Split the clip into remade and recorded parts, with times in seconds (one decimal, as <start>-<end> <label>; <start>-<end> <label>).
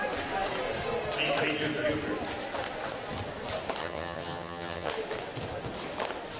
0.0-3.8 recorded; 3.8-4.9 remade; 4.9-6.4 recorded